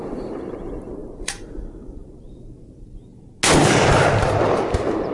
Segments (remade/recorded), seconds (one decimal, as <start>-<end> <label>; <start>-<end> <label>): 0.0-3.1 remade; 3.1-4.0 recorded; 4.0-5.1 remade